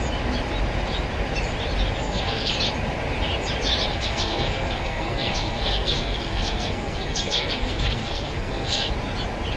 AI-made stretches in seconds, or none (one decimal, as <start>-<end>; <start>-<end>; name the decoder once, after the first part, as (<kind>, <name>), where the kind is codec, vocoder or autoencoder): 2.0-2.5 (codec, SNAC); 3.9-8.9